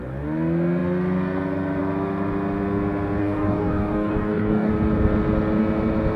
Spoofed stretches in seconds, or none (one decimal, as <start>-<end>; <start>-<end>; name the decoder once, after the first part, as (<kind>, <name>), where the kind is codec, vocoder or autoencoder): 3.2-4.7 (codec, DAC)